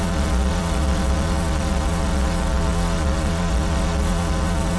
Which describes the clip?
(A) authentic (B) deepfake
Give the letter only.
B